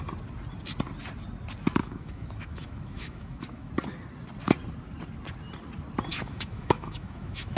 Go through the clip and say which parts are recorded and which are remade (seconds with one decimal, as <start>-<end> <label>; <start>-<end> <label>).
0.0-1.8 recorded; 1.8-3.7 remade; 3.7-6.1 recorded; 6.1-7.6 remade